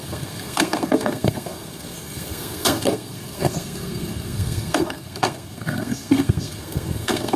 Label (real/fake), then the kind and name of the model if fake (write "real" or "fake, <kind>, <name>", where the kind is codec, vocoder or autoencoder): fake, codec, SNAC